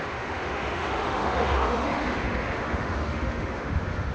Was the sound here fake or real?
fake